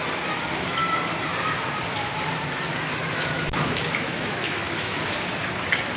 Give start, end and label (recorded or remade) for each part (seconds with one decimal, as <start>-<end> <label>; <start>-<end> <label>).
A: 0.0-3.0 recorded; 3.0-5.0 remade; 5.0-6.0 recorded